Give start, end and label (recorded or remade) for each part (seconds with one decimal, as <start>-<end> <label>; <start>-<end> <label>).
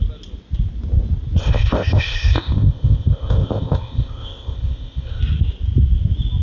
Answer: 0.0-1.4 recorded; 1.4-5.2 remade; 5.2-6.4 recorded